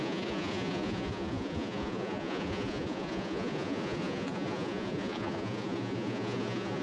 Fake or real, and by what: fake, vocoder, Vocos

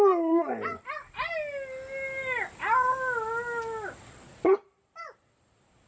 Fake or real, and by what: real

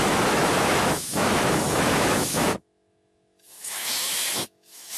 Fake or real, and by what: fake, autoencoder, DAC-VAE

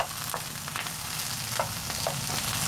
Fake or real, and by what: real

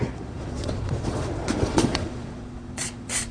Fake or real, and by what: fake, vocoder, Vocos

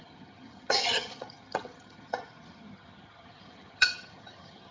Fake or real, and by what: fake, vocoder, HiFi-GAN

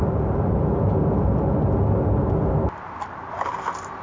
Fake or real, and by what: real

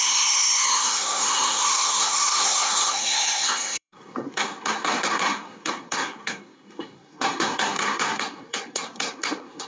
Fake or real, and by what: fake, codec, SNAC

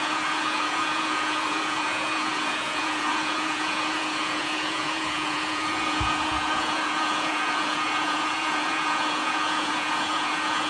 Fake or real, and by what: fake, vocoder, Vocos